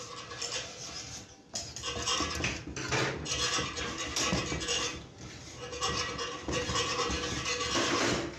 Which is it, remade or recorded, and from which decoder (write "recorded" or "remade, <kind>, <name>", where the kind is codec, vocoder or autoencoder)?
recorded